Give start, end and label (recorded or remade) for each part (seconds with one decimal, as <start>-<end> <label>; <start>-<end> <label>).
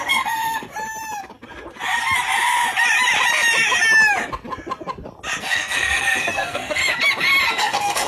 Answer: 0.0-0.7 remade; 0.7-5.4 recorded; 5.4-6.8 remade; 6.8-7.5 recorded; 7.5-8.1 remade